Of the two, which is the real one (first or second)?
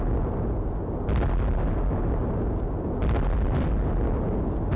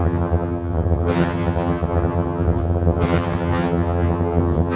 first